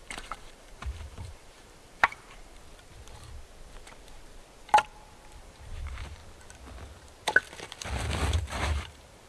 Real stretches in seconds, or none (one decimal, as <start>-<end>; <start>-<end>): 2.6-5.4; 6.2-8.5